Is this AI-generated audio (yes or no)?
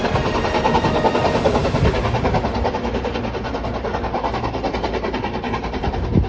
no